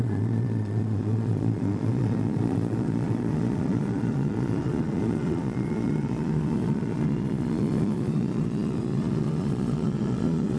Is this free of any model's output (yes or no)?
no